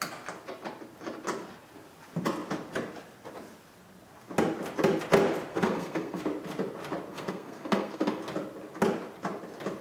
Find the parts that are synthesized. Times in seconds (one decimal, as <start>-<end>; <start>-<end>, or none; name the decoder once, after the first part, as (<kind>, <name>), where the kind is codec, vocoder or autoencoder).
5.5-6.2 (codec, SNAC); 7.1-8.2